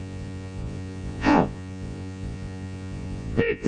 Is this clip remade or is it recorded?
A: remade